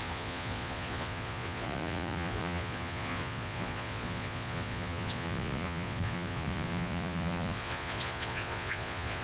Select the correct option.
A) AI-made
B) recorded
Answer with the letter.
A